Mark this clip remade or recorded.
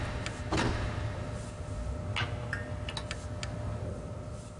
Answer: recorded